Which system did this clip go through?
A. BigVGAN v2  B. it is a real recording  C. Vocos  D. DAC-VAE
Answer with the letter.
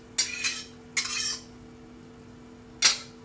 B